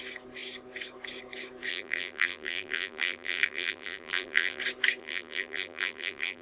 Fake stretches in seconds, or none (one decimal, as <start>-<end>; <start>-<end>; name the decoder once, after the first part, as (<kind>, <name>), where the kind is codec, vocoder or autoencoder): 1.7-4.6 (vocoder, BigVGAN v2); 5.0-6.4